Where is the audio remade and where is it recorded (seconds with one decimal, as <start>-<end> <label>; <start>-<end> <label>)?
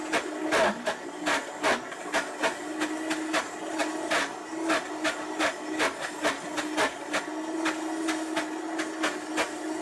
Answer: 0.0-9.8 recorded